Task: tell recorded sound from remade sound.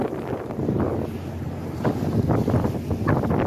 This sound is recorded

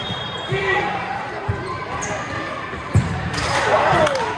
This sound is remade